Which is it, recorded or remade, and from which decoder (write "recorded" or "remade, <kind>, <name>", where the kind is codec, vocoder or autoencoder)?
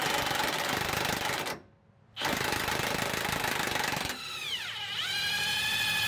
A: recorded